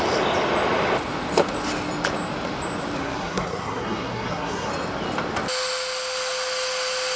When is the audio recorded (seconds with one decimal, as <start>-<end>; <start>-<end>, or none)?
0.0-3.0; 4.7-7.2